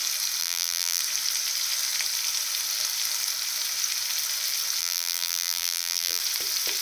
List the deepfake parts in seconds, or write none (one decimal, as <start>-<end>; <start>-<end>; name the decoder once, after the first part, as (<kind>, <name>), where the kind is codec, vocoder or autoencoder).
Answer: 0.4-1.0 (vocoder, BigVGAN v2); 4.8-6.2